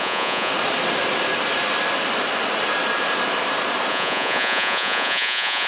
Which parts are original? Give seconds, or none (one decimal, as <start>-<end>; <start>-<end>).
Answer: 0.5-3.9